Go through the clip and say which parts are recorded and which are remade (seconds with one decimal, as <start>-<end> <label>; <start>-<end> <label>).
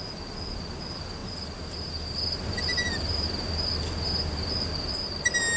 0.0-1.2 recorded; 1.2-4.5 remade; 4.5-5.6 recorded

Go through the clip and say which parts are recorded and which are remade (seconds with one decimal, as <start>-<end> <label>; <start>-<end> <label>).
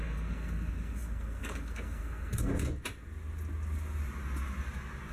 0.0-2.5 remade; 2.5-5.1 recorded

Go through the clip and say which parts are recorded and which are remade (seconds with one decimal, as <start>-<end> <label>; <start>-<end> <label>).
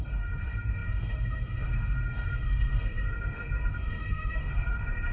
0.0-5.1 remade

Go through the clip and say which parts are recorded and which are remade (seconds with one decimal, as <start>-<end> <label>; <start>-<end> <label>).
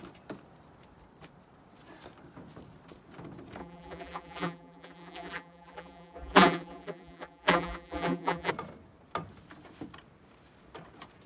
0.0-3.6 recorded; 3.6-8.5 remade; 8.5-11.3 recorded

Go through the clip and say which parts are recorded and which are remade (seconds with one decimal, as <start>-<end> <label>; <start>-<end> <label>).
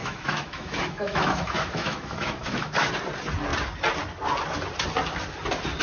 0.0-2.9 remade; 2.9-5.8 recorded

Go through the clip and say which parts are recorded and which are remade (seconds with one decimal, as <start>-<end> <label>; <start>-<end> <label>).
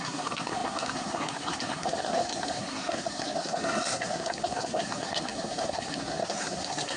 0.0-7.0 remade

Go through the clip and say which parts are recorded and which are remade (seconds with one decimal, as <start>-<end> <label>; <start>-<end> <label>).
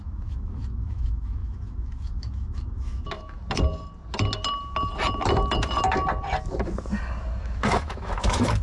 0.0-3.4 remade; 3.4-7.4 recorded; 7.4-8.6 remade